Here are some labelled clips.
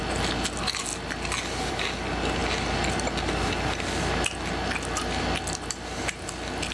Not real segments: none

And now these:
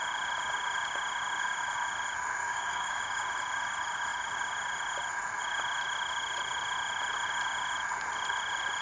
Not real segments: 2.4-3.0